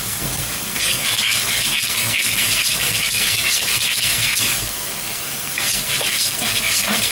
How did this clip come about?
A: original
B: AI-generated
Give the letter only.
B